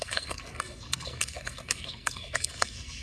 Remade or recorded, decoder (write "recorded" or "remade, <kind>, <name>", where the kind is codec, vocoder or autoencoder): remade, codec, SNAC